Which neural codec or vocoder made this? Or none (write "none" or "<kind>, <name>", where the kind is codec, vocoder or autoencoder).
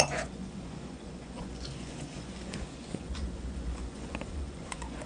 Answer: vocoder, Vocos